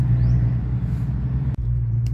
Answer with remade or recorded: remade